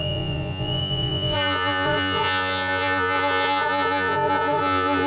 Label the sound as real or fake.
fake